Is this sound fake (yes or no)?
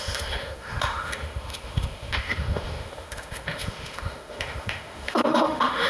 yes